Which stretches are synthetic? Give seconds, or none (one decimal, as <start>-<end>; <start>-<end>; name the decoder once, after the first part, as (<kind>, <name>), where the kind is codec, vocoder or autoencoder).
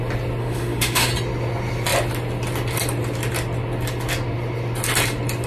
0.4-1.1 (autoencoder, DAC-VAE)